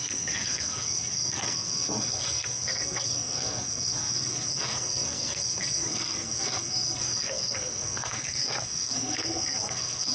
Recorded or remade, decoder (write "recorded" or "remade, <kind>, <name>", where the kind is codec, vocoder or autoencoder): remade, codec, SNAC